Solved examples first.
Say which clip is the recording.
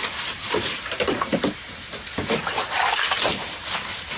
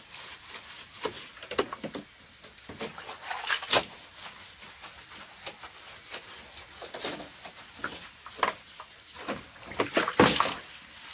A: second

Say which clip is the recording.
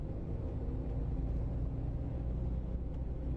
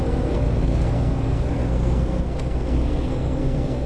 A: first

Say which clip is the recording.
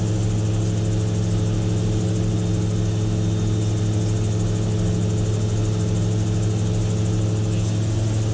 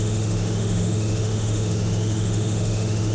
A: first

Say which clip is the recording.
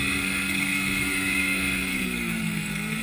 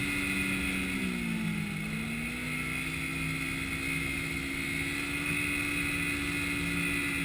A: second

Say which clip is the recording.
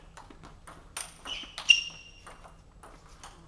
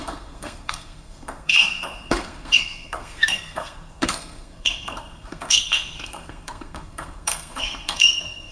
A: first